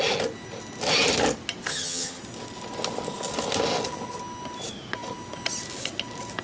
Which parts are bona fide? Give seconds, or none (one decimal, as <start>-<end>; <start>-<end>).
0.0-1.7; 2.2-6.4